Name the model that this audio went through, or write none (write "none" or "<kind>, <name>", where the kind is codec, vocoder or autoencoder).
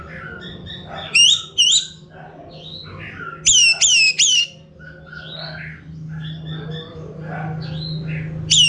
none